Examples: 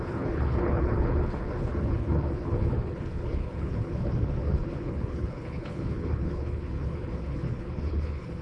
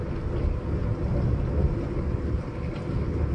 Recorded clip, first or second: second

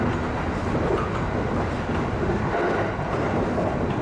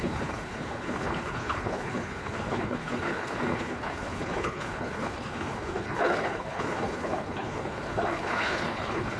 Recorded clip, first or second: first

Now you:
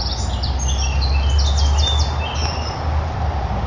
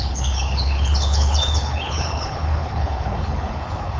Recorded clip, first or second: first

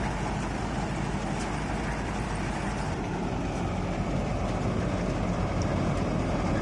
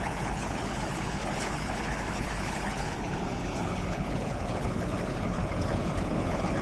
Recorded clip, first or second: first